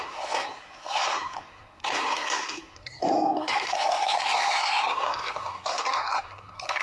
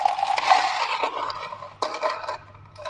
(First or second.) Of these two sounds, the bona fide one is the second